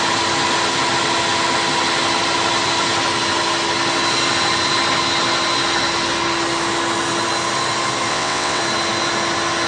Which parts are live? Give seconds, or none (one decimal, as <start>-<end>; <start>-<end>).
0.0-8.1; 8.6-9.7